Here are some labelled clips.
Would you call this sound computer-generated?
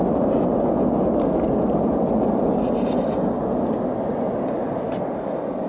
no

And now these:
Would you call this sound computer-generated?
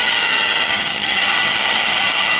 yes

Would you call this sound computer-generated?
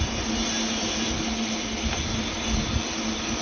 no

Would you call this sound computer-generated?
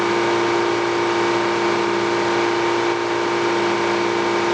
no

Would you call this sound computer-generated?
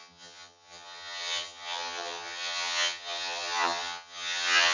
yes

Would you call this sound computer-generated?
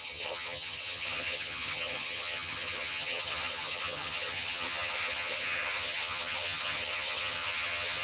yes